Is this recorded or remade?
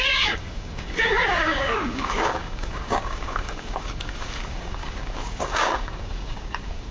remade